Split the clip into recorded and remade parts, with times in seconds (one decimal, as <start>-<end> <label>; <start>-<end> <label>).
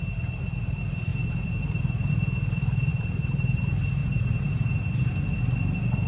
0.0-2.9 recorded; 2.9-3.6 remade; 3.6-4.0 recorded; 4.0-5.1 remade; 5.1-6.1 recorded